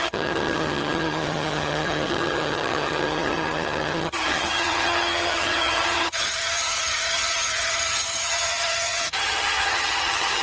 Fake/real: fake